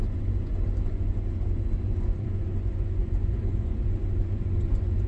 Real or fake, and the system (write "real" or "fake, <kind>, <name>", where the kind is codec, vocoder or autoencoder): fake, vocoder, Vocos